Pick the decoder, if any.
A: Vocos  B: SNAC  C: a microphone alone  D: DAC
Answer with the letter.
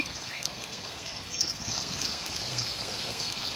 B